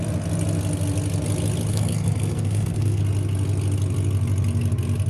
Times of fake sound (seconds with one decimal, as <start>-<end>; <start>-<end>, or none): 1.7-3.0